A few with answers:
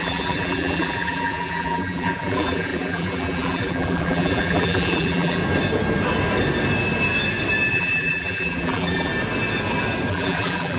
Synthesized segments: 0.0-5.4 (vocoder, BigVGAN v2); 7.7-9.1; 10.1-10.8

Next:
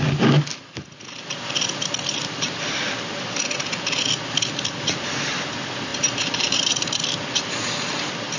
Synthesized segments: 5.9-7.0 (vocoder, BigVGAN v2)